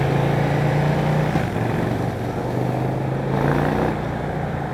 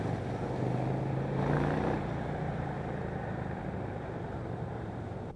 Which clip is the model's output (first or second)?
second